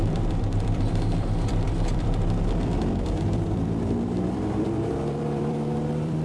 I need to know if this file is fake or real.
fake